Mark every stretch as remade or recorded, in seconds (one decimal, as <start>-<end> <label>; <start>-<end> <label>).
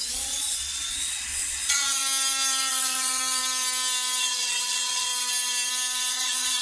0.0-2.0 remade; 2.0-2.7 recorded; 2.7-3.4 remade; 3.4-4.2 recorded; 4.2-5.1 remade; 5.1-6.1 recorded; 6.1-6.6 remade